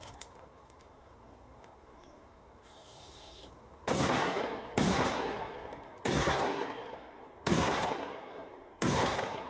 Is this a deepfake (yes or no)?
yes